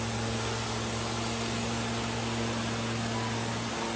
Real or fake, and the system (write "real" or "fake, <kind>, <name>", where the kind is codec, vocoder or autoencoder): real